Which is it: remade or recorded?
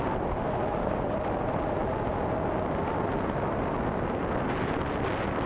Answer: recorded